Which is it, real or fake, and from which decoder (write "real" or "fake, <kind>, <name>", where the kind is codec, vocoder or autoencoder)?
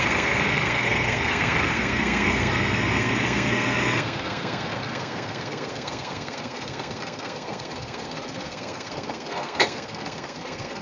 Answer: fake, codec, SNAC